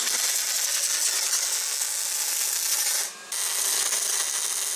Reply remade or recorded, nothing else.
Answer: recorded